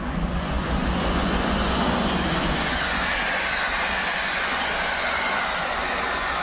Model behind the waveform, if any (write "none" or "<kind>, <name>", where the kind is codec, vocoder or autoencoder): vocoder, Vocos